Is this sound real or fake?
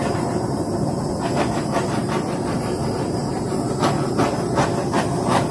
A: fake